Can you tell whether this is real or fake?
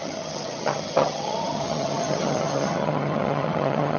fake